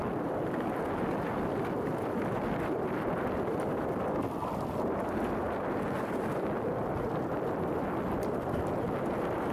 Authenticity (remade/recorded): recorded